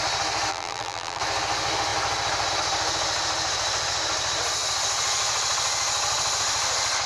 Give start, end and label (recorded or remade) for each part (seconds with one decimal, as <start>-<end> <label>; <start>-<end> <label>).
0.0-0.5 recorded; 0.5-1.2 remade; 1.2-7.1 recorded